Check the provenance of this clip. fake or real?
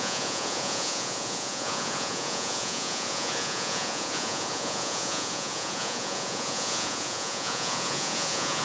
fake